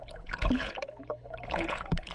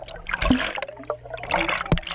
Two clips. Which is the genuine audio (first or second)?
second